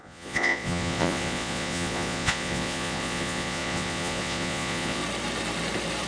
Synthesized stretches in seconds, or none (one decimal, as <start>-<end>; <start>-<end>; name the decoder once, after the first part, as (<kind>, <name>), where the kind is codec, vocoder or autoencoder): 0.0-5.0 (vocoder, Vocos)